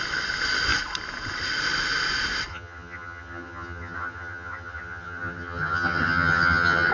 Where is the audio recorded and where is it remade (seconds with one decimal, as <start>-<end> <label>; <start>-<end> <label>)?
0.0-2.5 recorded; 2.5-6.9 remade